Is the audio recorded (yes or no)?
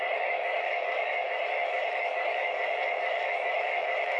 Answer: no